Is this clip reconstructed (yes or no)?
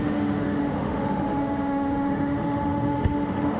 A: yes